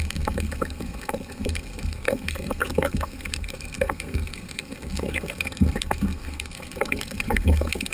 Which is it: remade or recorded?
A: remade